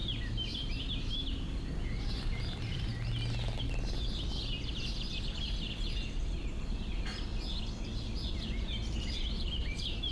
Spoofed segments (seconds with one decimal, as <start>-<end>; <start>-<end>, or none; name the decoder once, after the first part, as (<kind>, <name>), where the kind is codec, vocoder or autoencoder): 2.0-2.9 (vocoder, BigVGAN v2); 6.4-7.3; 8.9-10.1